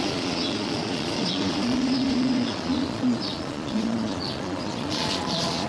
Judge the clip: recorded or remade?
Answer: remade